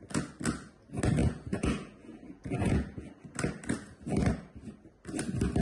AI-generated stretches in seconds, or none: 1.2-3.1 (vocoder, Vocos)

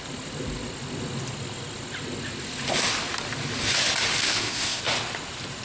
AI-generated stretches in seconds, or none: 4.2-4.8 (codec, ZipCodec)

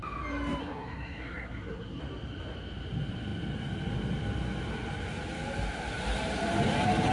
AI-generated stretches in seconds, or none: 0.6-2.0 (codec, SNAC)

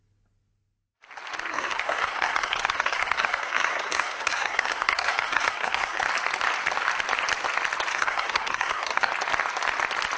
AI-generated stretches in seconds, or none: 1.5-6.0 (codec, SNAC); 7.9-9.1

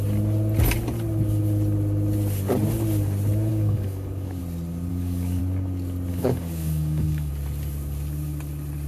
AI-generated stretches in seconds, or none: 3.5-4.4 (codec, DAC); 4.9-5.4; 6.1-7.3

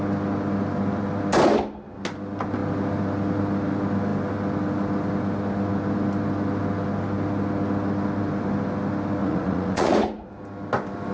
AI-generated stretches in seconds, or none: 9.2-10.3 (vocoder, Vocos)

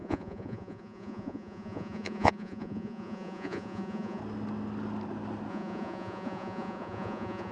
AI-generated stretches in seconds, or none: 0.0-4.2 (vocoder, Vocos); 5.5-7.5

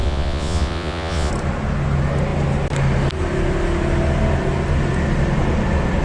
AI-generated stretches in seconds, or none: 0.0-1.3 (vocoder, Vocos)